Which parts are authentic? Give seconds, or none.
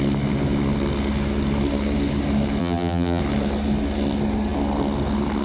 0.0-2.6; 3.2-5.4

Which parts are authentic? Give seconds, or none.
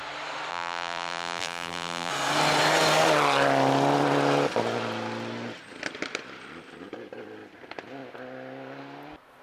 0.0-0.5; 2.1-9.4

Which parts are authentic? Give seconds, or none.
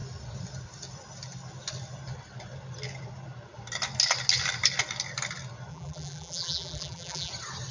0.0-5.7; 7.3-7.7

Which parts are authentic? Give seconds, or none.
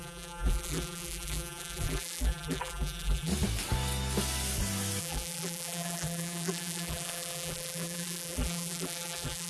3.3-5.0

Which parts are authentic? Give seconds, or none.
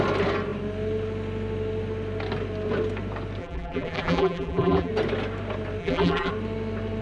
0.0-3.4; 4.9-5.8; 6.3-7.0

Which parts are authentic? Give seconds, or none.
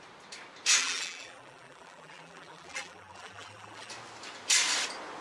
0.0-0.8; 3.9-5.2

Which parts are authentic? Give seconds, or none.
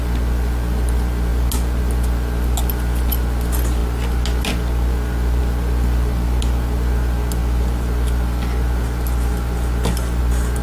0.0-10.6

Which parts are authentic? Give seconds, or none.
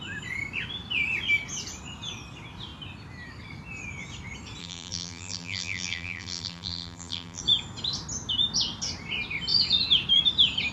0.0-4.6; 7.4-10.7